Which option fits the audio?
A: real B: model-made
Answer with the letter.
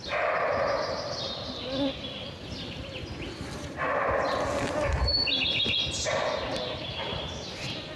A